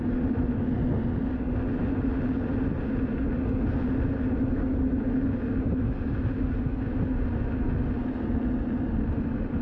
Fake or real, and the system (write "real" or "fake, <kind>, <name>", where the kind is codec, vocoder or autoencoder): real